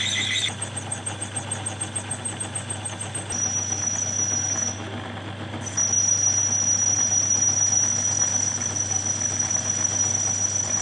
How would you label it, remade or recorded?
recorded